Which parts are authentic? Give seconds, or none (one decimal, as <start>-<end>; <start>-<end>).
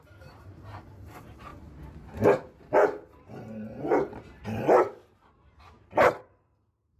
1.5-3.8